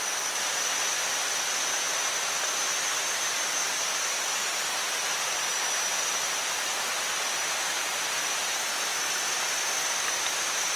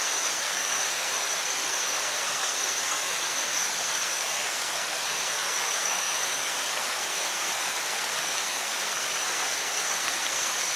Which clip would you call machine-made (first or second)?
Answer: second